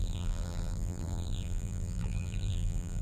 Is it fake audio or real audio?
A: fake